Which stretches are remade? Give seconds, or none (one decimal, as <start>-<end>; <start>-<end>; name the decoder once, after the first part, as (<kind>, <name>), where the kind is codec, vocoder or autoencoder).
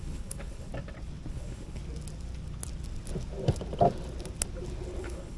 0.0-0.7 (codec, HILCodec); 1.3-1.8; 5.0-5.4